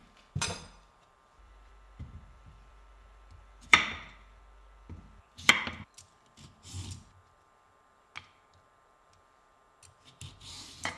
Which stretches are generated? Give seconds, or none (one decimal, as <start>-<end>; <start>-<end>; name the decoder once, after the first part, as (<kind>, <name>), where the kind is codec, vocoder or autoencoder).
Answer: 0.0-3.8 (vocoder, BigVGAN v2)